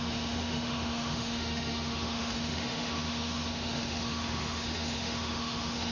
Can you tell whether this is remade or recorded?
remade